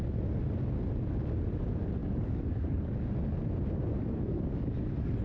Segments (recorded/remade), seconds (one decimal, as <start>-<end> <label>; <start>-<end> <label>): 0.0-2.0 recorded; 2.0-3.1 remade; 3.1-3.9 recorded; 3.9-5.2 remade